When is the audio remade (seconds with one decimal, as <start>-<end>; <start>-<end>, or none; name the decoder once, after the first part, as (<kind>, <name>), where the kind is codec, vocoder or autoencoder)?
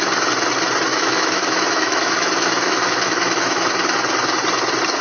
0.9-3.7 (autoencoder, DAC-VAE)